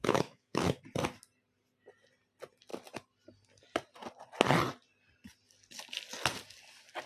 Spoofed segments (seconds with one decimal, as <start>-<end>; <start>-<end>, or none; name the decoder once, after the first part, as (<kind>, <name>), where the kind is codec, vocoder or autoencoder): 0.0-0.8 (autoencoder, DAC-VAE)